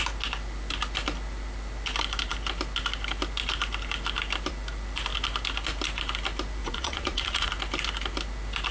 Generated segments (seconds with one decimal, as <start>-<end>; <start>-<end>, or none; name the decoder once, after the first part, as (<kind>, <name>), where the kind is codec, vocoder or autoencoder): 6.6-7.5 (vocoder, Vocos)